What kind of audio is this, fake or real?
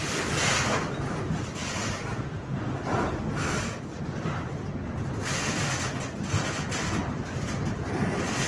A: real